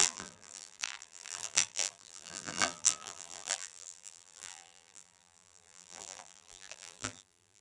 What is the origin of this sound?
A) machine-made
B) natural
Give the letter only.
A